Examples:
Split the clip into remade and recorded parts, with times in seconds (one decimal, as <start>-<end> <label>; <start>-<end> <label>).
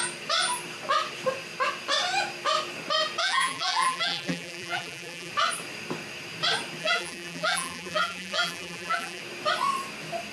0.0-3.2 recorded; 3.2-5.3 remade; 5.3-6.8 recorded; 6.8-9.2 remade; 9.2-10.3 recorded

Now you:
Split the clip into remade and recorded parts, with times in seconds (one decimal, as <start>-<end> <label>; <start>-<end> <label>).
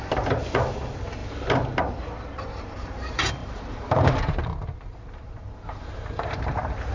0.0-1.2 remade; 1.2-1.8 recorded; 1.8-6.9 remade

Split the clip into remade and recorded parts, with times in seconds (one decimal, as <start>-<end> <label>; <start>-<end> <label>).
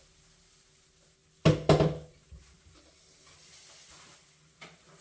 0.0-5.0 recorded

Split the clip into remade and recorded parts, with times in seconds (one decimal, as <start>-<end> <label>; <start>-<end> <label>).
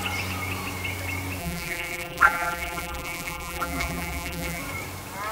0.0-1.4 recorded; 1.4-4.6 remade; 4.6-5.3 recorded